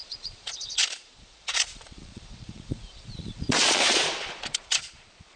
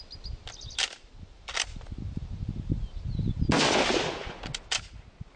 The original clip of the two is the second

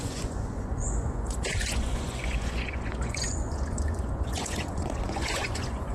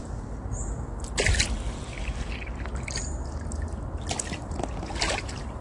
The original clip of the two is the second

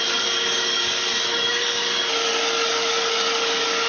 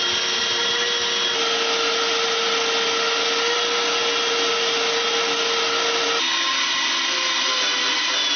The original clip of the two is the second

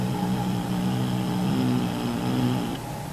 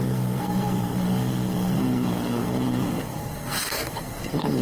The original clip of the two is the first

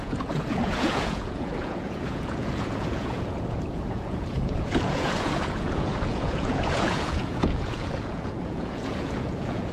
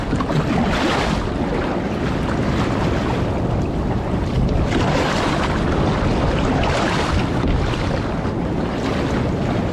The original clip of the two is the second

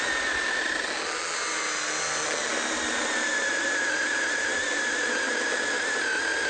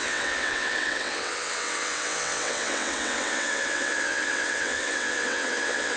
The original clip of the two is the first